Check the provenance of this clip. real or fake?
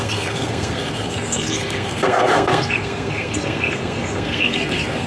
fake